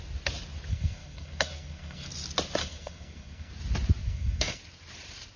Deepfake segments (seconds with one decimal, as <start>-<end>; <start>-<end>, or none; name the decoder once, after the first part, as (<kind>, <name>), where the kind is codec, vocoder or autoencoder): 0.7-2.1 (codec, SNAC); 2.6-3.5; 4.0-4.6